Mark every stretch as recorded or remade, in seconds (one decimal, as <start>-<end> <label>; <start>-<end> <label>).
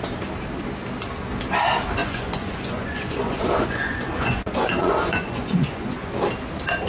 0.0-2.0 recorded; 2.0-6.1 remade; 6.1-6.9 recorded